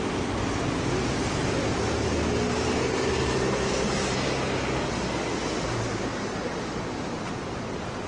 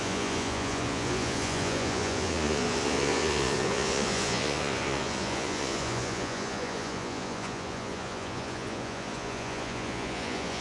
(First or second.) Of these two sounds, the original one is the first